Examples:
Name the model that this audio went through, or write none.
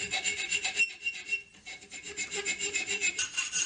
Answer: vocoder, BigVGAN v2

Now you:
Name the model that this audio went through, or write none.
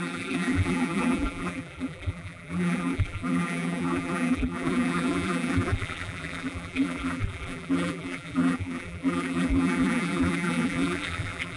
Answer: vocoder, BigVGAN v2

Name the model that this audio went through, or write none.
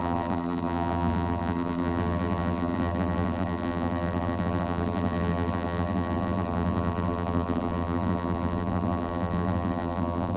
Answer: vocoder, BigVGAN v2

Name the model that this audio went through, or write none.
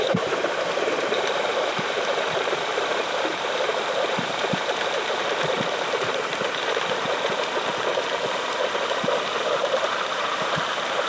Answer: vocoder, BigVGAN v2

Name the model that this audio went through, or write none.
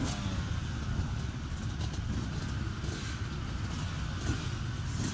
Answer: none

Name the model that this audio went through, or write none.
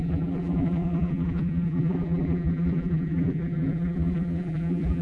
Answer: vocoder, BigVGAN v2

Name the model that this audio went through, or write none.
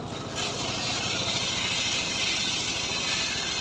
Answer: none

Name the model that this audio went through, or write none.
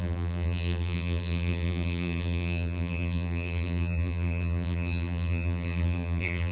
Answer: vocoder, BigVGAN v2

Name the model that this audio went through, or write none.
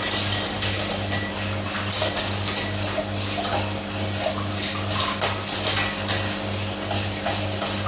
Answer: none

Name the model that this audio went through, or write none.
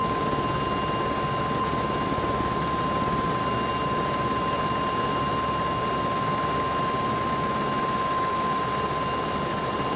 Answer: none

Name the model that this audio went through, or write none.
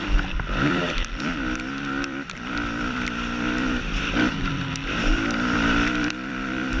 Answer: vocoder, BigVGAN v2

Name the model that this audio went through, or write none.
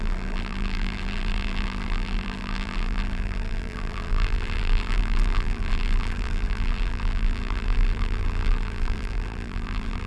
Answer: vocoder, BigVGAN v2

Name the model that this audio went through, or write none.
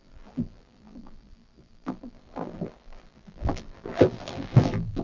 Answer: vocoder, BigVGAN v2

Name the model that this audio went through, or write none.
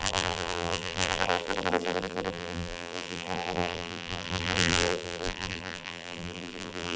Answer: vocoder, BigVGAN v2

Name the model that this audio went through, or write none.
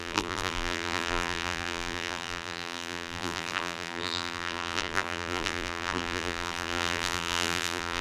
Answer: vocoder, BigVGAN v2